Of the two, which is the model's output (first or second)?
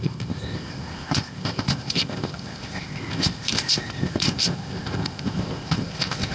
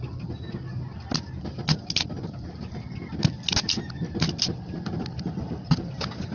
first